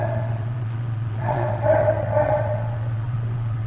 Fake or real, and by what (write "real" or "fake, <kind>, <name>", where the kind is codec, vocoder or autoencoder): fake, vocoder, WaveNeXt